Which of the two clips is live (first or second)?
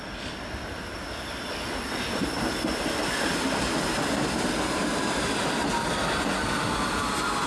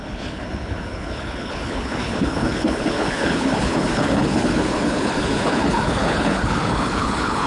first